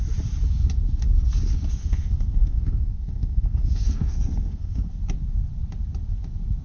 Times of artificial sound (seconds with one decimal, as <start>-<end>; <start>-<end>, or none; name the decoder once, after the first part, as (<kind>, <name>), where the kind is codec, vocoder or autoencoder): 1.8-4.9 (codec, SNAC)